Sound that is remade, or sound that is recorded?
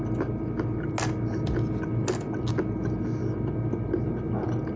recorded